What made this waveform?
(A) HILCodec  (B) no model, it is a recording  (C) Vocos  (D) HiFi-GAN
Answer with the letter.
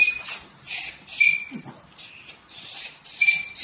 B